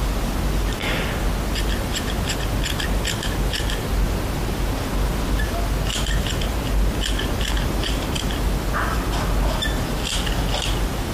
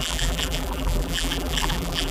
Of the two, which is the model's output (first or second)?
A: second